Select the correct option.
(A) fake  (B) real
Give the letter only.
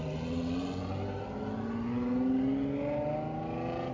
B